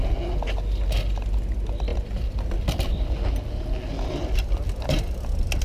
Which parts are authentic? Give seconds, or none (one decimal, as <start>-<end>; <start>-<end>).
0.0-5.6